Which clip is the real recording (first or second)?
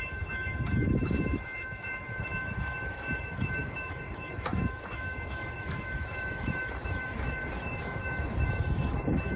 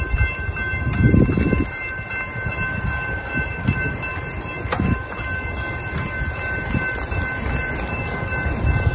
second